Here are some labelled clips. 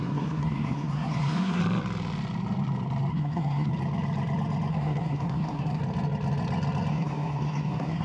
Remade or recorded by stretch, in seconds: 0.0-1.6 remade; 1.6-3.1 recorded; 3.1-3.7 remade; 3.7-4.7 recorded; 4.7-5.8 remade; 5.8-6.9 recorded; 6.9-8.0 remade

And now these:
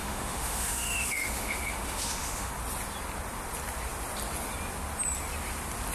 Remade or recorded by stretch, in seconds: 0.0-2.5 remade; 2.5-5.9 recorded

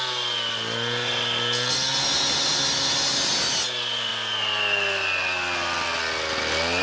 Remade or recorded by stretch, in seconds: 0.0-6.8 recorded

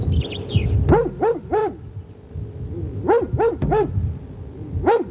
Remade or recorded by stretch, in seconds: 0.0-1.6 recorded; 1.6-2.3 remade; 2.3-5.1 recorded

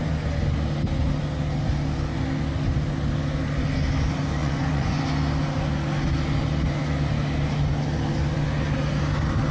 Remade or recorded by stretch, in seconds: 0.0-4.4 recorded; 4.4-5.0 remade; 5.0-9.5 recorded

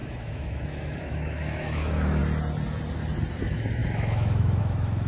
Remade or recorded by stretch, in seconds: 0.0-2.2 remade; 2.2-3.4 recorded; 3.4-5.1 remade